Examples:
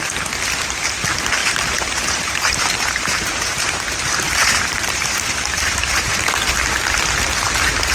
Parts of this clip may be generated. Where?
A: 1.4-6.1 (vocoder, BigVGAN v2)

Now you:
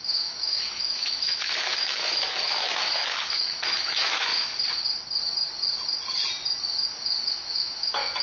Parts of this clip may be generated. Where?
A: 0.0-4.3 (autoencoder, DAC-VAE); 7.2-8.2

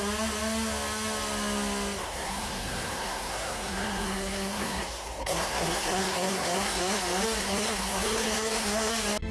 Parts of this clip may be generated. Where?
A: 2.0-7.0 (codec, SNAC); 7.4-8.9

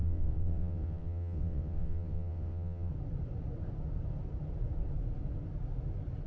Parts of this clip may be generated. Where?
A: 0.0-2.9 (vocoder, WaveNeXt)